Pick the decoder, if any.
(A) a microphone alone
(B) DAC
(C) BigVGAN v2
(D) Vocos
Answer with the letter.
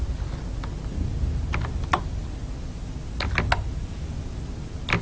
A